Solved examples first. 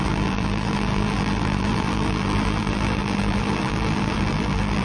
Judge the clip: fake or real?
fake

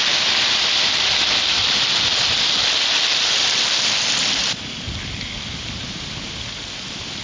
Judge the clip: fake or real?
real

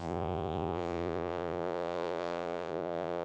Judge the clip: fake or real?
fake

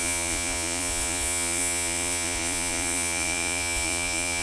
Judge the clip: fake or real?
fake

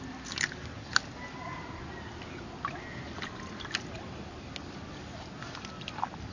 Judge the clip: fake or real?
real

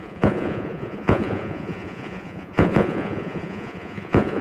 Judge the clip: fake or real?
fake